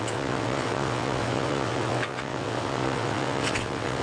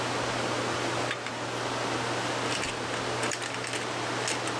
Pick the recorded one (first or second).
second